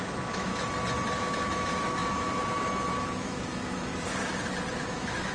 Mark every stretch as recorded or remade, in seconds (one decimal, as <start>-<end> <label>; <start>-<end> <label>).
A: 0.0-0.5 remade; 0.5-1.2 recorded; 1.2-3.9 remade; 3.9-4.7 recorded; 4.7-5.3 remade

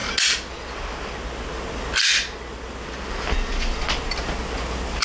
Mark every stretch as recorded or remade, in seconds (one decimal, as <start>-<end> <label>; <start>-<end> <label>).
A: 0.0-5.0 recorded

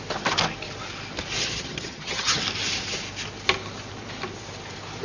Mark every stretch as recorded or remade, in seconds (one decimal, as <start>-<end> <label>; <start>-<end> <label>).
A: 0.0-1.4 recorded; 1.4-2.4 remade; 2.4-5.0 recorded